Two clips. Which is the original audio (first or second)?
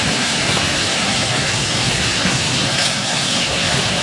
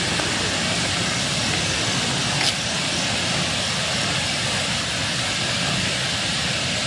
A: second